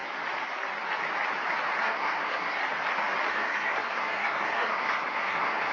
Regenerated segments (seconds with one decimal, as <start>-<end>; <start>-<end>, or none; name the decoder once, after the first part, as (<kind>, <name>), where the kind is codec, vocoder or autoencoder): 1.8-2.6 (codec, SNAC); 3.3-5.7